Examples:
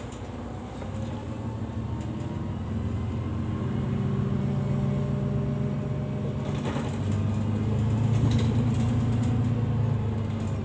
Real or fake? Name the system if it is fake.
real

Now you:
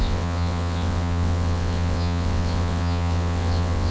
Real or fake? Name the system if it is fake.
fake, vocoder, WaveNeXt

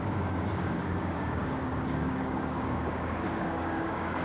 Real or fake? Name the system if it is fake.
fake, codec, DAC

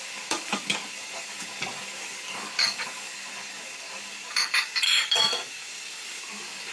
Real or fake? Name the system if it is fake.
fake, codec, DAC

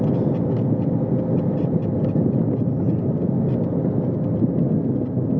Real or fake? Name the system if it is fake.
real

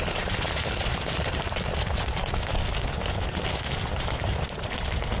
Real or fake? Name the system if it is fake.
real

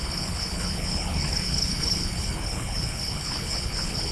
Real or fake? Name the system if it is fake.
fake, codec, HILCodec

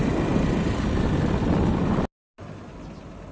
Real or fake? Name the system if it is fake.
real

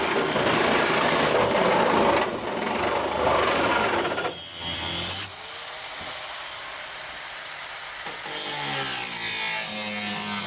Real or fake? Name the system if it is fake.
real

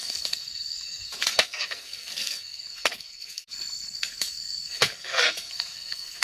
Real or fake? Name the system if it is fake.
fake, codec, SNAC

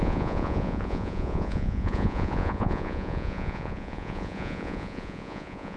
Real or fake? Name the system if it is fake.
fake, vocoder, Vocos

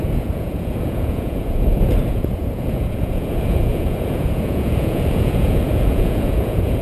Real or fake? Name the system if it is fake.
fake, vocoder, Vocos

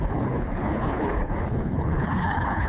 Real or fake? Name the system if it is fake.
fake, codec, HILCodec